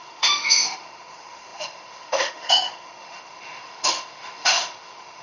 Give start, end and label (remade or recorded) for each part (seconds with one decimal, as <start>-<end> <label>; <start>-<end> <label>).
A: 0.0-5.2 remade